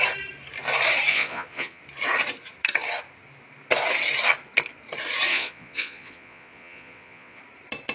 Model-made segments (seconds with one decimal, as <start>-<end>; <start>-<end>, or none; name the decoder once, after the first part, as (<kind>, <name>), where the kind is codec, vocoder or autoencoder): 1.1-1.8 (vocoder, Vocos); 5.3-7.4